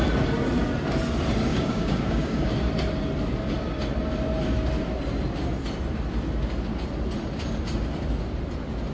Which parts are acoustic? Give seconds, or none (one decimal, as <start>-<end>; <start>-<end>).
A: 0.0-1.5; 2.5-8.9